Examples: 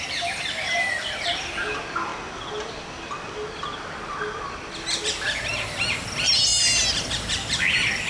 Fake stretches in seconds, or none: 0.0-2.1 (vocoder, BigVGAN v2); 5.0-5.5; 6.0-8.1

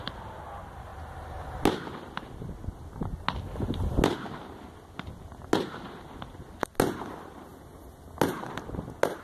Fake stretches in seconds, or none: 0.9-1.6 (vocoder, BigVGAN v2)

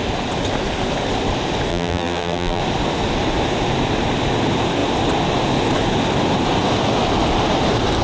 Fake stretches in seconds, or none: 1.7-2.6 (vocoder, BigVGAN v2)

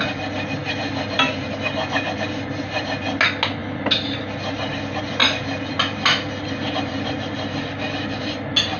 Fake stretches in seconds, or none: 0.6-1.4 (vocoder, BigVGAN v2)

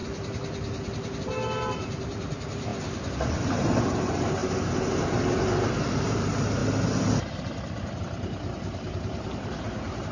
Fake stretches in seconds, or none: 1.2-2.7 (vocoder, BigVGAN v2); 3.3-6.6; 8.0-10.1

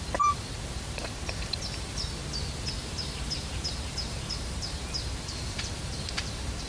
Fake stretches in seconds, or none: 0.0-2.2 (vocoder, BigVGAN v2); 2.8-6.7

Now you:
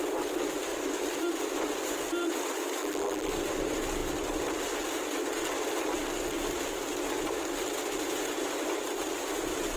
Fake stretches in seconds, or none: 2.8-3.3 (vocoder, BigVGAN v2)